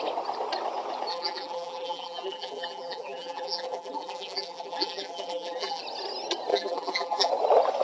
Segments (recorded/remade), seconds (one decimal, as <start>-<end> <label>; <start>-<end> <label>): 0.0-1.1 recorded; 1.1-5.8 remade; 5.8-6.5 recorded; 6.5-7.3 remade; 7.3-7.8 recorded